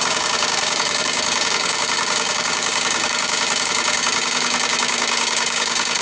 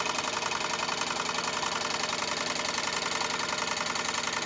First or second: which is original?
second